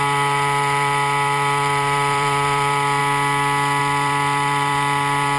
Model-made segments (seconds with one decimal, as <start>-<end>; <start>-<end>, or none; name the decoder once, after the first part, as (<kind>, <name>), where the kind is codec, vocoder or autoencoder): 0.0-3.0 (vocoder, BigVGAN v2); 3.8-5.4